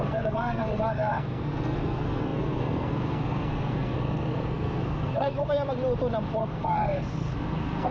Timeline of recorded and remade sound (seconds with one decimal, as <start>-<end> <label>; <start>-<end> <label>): 0.0-5.4 remade; 5.4-6.4 recorded; 6.4-7.9 remade